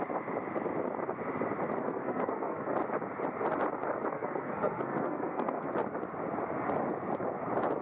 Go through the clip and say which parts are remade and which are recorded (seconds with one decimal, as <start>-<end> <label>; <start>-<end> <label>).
0.0-1.8 recorded; 1.8-2.7 remade; 2.7-4.1 recorded; 4.1-5.7 remade; 5.7-7.8 recorded

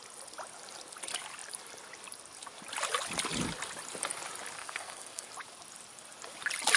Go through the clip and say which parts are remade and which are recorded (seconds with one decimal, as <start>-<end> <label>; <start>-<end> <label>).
0.0-4.6 recorded; 4.6-5.3 remade; 5.3-6.8 recorded

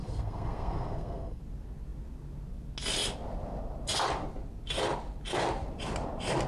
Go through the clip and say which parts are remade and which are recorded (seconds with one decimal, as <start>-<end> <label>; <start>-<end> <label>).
0.0-1.4 remade; 1.4-6.5 recorded